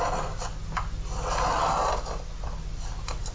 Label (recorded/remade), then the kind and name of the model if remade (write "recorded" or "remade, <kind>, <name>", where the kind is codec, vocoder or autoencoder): recorded